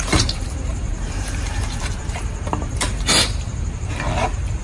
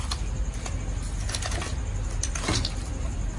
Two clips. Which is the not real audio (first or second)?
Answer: first